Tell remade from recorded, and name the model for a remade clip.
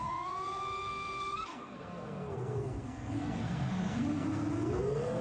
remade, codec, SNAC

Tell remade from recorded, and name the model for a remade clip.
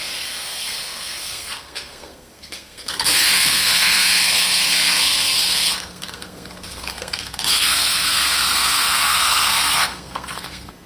remade, codec, SNAC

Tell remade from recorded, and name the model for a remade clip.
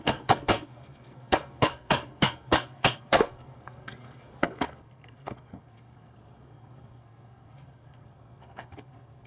remade, codec, SNAC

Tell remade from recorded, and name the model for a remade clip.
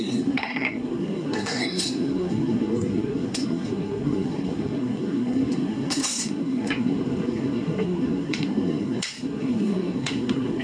remade, codec, SNAC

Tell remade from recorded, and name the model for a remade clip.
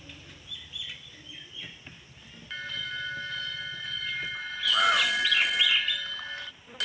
recorded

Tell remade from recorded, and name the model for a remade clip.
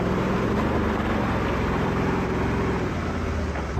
recorded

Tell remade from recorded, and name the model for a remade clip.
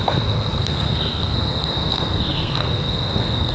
remade, codec, SNAC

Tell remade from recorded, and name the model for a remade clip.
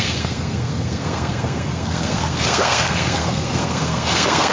remade, codec, SNAC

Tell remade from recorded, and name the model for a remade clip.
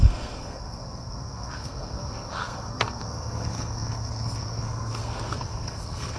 remade, codec, SNAC